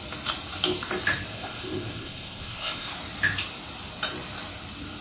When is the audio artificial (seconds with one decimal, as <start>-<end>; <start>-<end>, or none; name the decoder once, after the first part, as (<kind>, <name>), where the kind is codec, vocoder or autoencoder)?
1.3-2.9 (codec, ZipCodec)